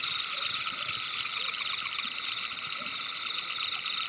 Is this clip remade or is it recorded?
recorded